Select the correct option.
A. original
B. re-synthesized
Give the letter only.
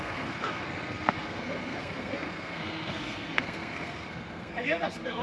B